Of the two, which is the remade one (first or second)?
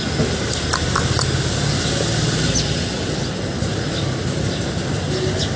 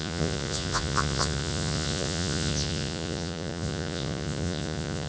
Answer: second